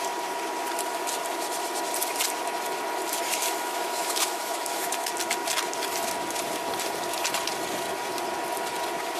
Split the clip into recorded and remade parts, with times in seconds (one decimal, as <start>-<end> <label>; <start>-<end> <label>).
0.0-3.4 recorded; 3.4-5.1 remade; 5.1-9.2 recorded